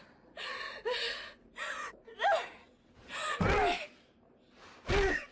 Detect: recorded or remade recorded